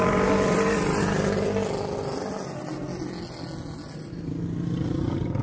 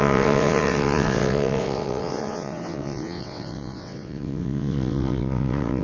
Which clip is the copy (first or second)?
second